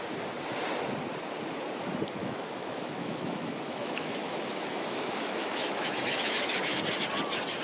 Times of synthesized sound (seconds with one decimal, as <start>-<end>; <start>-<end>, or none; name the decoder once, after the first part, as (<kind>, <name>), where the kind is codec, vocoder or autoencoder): 2.2-6.8 (autoencoder, DAC-VAE)